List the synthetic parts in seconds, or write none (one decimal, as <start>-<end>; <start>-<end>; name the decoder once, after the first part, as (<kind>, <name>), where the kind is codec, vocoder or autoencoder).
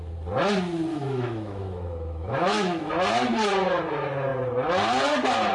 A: 0.9-2.9 (autoencoder, DAC-VAE)